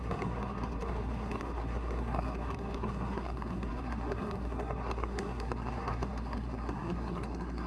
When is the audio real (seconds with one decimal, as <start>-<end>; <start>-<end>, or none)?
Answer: none